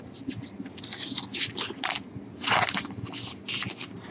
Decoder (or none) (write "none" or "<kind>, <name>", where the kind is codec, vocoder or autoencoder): none